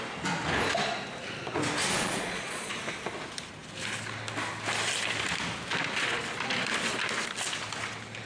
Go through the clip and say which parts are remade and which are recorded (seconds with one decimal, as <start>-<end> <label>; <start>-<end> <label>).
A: 0.0-1.9 recorded; 1.9-2.7 remade; 2.7-8.3 recorded